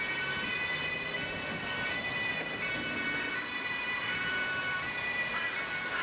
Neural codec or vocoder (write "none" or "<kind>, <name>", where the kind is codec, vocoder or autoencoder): none